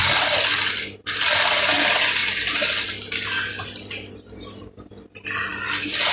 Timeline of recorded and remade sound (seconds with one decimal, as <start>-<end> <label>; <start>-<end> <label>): 0.0-5.5 recorded; 5.5-6.1 remade